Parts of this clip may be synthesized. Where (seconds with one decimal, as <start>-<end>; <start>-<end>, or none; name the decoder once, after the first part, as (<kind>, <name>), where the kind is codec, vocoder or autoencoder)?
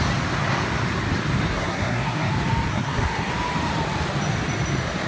1.5-2.3 (codec, SNAC); 2.7-3.3